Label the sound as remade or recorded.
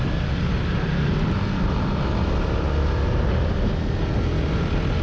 recorded